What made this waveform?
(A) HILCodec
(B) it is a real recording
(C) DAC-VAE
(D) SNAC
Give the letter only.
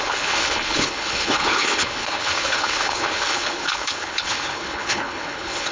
A